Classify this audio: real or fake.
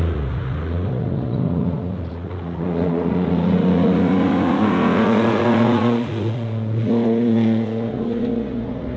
fake